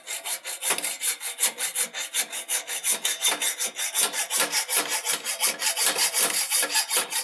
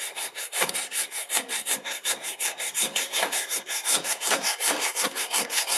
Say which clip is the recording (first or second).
first